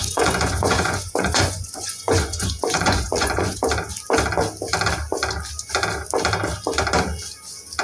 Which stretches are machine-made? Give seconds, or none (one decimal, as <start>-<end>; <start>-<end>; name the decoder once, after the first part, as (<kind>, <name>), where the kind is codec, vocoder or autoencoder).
0.0-3.6 (vocoder, Vocos)